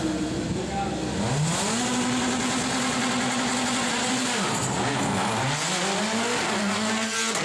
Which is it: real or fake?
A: real